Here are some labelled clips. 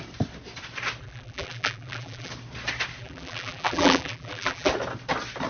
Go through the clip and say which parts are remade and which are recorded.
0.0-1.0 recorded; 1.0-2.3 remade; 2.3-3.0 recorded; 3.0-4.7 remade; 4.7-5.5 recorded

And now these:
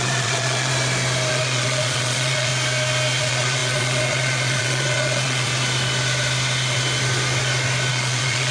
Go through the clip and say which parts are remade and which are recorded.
0.0-0.7 remade; 0.7-1.3 recorded; 1.3-2.5 remade; 2.5-3.2 recorded; 3.2-5.5 remade; 5.5-7.9 recorded; 7.9-8.5 remade

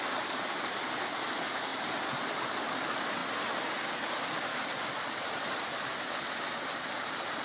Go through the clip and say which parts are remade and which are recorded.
0.0-7.4 recorded

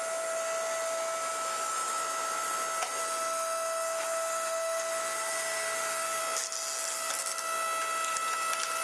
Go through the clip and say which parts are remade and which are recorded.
0.0-3.0 recorded; 3.0-6.2 remade; 6.2-8.8 recorded